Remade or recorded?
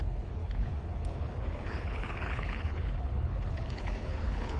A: remade